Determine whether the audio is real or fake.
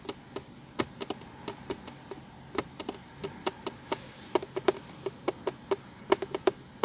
real